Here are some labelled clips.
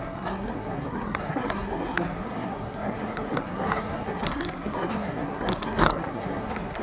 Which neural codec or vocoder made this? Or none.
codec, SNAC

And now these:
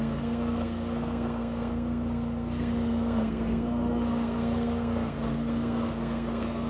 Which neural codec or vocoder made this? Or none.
codec, SNAC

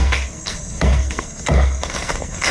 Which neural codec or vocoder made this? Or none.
codec, SNAC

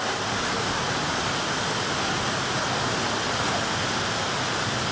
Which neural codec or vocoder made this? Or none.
none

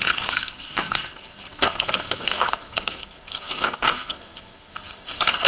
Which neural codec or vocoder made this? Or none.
codec, SNAC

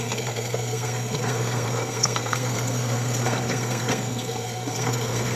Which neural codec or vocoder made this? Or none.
codec, SNAC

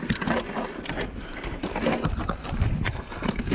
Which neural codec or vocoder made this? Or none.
none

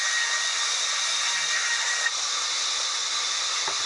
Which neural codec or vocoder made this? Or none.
none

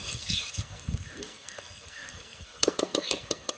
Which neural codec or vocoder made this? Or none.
codec, SNAC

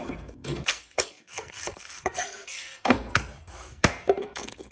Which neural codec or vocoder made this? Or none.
codec, SNAC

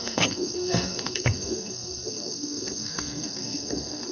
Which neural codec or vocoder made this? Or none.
codec, SNAC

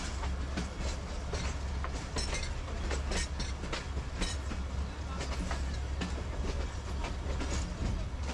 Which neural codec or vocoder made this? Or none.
none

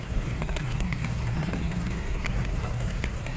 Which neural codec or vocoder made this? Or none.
codec, SNAC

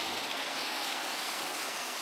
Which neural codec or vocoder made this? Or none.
codec, SNAC